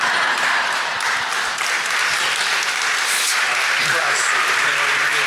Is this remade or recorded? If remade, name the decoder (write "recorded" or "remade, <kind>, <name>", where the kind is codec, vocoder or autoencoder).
recorded